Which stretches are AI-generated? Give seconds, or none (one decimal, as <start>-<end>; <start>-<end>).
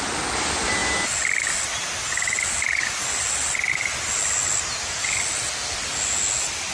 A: none